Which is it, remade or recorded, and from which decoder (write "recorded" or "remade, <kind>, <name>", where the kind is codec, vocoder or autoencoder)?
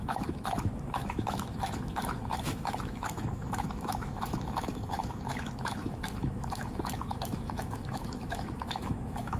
remade, autoencoder, DAC-VAE